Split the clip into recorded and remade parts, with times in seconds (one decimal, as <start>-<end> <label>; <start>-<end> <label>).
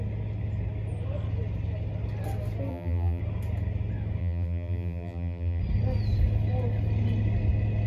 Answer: 0.0-2.7 recorded; 2.7-3.2 remade; 3.2-4.2 recorded; 4.2-5.6 remade; 5.6-7.9 recorded